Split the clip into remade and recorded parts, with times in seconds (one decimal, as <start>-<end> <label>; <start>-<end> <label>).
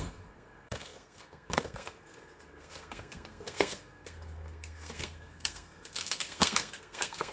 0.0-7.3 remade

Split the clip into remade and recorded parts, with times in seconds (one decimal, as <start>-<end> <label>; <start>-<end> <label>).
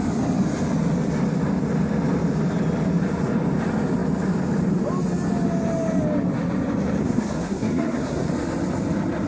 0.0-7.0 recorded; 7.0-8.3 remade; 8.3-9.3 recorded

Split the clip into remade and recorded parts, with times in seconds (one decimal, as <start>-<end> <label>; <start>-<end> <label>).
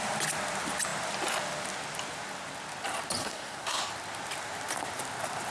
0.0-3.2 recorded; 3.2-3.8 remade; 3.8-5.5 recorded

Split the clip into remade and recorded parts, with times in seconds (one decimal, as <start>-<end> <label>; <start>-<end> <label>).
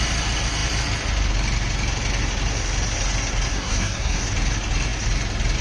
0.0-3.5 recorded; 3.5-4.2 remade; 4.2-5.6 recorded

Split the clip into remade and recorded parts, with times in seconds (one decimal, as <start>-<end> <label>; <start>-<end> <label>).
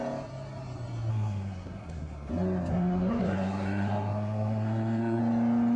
0.0-1.1 recorded; 1.1-2.3 remade; 2.3-2.7 recorded; 2.7-5.2 remade; 5.2-5.8 recorded